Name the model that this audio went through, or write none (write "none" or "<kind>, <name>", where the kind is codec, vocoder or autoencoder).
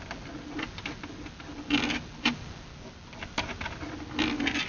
none